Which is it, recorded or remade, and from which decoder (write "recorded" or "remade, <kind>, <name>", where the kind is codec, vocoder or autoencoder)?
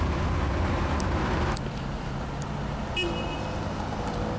recorded